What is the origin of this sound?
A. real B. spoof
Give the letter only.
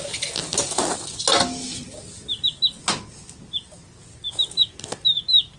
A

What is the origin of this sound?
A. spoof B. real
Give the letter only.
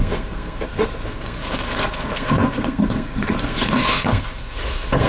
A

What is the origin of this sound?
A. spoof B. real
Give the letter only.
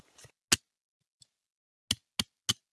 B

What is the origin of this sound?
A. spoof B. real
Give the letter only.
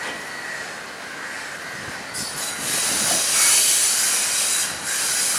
B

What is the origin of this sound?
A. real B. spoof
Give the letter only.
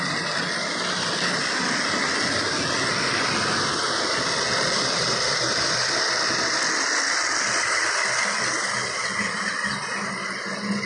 A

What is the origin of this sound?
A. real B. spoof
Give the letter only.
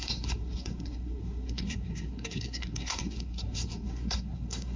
B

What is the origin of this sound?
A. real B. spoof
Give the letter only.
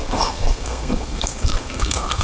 B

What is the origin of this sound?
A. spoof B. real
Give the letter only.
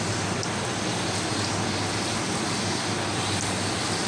B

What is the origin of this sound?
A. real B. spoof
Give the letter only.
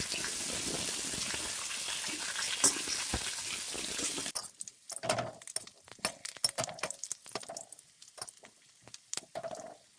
A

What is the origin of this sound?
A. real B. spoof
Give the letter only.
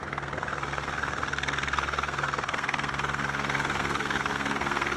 B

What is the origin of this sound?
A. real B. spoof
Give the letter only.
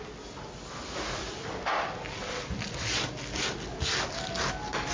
A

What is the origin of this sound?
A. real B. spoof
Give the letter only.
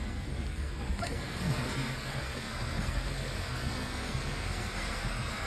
B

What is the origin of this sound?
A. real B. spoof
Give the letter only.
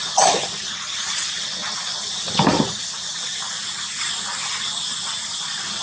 A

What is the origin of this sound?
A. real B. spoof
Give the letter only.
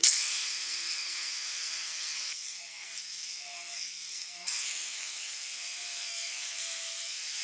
B